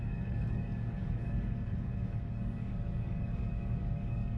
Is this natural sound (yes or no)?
no